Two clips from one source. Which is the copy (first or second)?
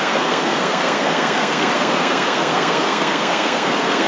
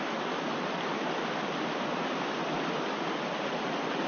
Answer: first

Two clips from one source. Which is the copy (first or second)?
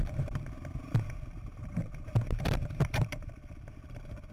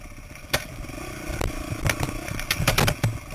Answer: first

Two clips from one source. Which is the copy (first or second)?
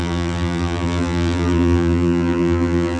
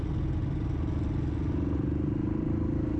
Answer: first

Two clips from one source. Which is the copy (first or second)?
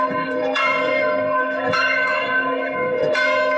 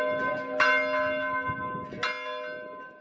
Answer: first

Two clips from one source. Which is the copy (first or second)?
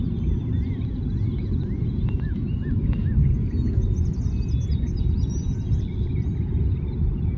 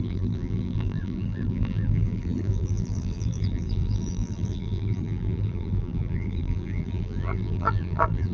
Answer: second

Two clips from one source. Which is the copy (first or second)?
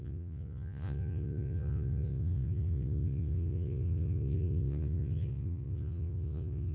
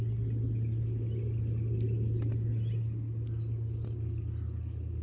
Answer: first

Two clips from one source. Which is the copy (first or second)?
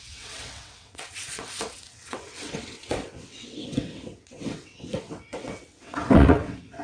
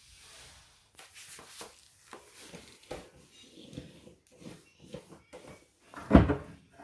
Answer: first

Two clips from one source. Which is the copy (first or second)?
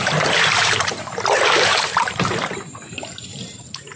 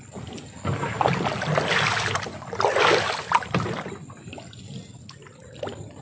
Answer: first